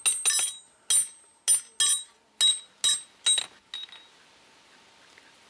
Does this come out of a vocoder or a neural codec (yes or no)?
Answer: no